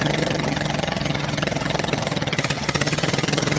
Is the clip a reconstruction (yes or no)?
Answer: yes